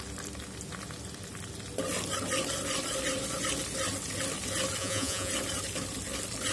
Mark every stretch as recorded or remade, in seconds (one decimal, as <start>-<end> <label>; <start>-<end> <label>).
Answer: 0.0-4.8 recorded; 4.8-5.3 remade; 5.3-6.5 recorded